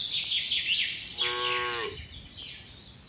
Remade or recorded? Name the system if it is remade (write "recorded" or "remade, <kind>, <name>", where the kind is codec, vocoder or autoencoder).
recorded